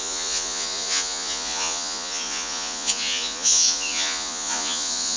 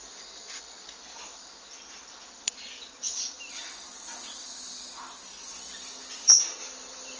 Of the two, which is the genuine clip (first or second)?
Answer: second